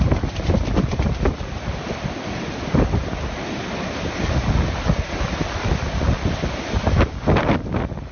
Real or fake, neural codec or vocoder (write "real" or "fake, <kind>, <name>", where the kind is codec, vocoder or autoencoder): real